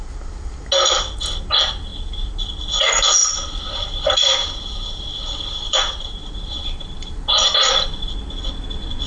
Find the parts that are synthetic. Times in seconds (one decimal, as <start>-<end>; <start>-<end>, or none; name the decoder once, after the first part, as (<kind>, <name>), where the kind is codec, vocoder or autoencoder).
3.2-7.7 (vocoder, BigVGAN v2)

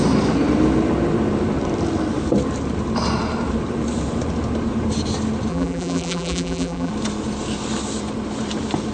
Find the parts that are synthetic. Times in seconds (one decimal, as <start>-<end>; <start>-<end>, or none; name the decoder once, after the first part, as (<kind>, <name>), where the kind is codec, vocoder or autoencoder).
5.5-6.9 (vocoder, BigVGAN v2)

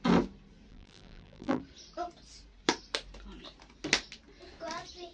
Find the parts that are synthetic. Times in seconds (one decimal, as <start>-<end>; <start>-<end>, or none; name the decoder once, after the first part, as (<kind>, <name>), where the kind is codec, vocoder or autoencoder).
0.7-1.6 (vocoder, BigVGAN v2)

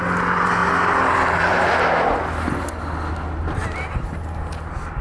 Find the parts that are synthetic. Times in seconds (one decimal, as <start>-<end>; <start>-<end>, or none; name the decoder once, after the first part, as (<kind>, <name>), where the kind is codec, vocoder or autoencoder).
0.6-1.7 (vocoder, BigVGAN v2); 3.6-4.5

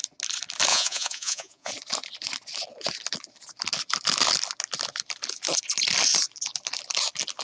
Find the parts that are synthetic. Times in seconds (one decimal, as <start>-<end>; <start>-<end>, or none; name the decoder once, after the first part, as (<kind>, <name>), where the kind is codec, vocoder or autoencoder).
0.7-1.7 (vocoder, Vocos)

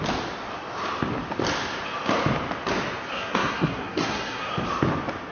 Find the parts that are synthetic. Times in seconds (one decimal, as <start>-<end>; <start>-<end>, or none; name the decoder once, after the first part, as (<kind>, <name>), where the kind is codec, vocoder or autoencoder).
3.1-4.5 (codec, SNAC)